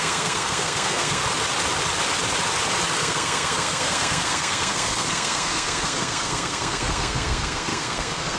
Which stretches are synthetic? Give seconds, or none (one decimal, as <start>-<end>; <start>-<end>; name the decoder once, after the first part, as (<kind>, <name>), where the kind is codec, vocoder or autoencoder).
0.0-1.2 (codec, SNAC); 2.9-8.4